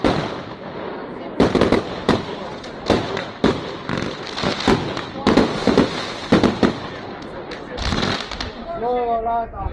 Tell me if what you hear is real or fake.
real